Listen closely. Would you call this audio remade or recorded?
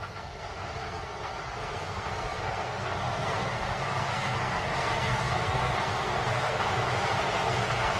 remade